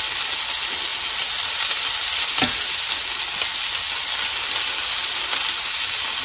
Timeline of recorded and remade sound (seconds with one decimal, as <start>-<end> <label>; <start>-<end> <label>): 0.0-6.2 recorded